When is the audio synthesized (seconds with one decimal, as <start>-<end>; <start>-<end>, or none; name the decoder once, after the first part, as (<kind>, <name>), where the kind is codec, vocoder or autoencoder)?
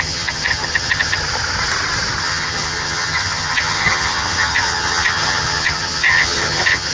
0.0-1.2 (vocoder, HiFi-GAN); 2.2-6.9